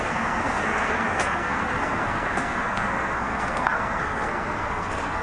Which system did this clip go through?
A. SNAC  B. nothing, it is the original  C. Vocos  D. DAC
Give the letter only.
A